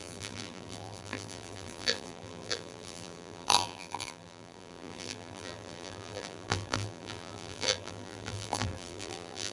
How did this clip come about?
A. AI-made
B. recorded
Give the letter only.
A